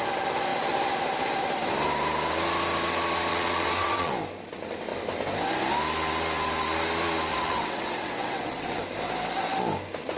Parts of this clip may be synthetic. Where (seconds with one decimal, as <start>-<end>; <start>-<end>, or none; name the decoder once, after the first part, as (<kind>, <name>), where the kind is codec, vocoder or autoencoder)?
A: 3.3-4.1 (vocoder, WaveNeXt); 7.3-8.8